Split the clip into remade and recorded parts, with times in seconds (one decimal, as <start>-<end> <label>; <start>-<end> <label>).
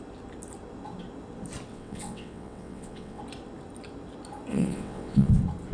0.0-1.7 recorded; 1.7-3.2 remade; 3.2-4.5 recorded; 4.5-5.3 remade; 5.3-5.7 recorded